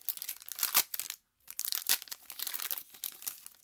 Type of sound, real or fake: real